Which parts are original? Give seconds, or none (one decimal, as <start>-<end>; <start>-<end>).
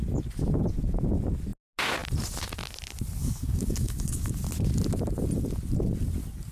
0.0-3.2; 4.3-6.5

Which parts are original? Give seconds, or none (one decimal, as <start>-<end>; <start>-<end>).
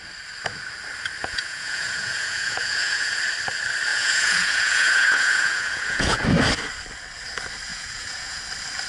0.0-1.2; 3.1-3.9; 6.2-7.7; 8.4-8.9